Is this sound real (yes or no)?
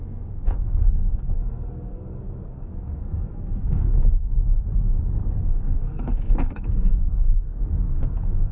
no